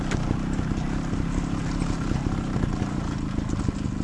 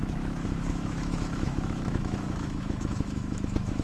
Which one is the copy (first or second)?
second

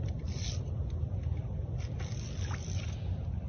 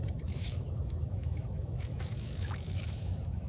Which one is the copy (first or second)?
second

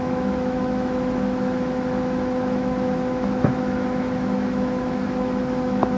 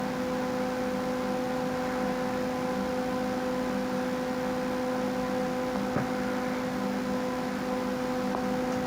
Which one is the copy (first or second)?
first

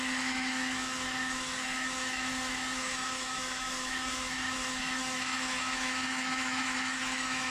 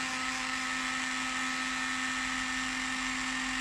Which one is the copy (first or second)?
first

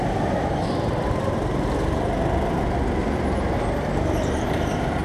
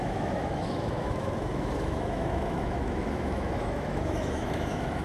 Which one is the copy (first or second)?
second